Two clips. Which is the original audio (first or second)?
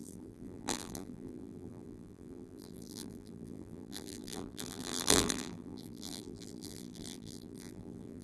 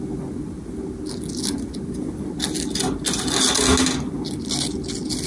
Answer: second